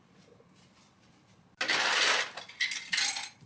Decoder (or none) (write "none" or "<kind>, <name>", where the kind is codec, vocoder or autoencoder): none